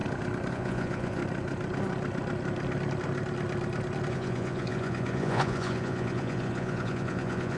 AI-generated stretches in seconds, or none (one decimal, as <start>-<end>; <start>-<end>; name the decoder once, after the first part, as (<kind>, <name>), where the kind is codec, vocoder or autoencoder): 0.5-1.2 (vocoder, Vocos); 4.1-7.6